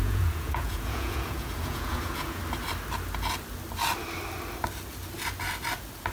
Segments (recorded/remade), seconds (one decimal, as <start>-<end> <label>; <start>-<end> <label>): 0.0-2.4 remade; 2.4-6.1 recorded